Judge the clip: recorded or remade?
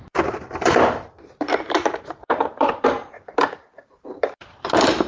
remade